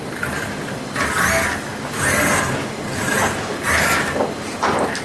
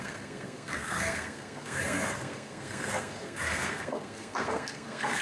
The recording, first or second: first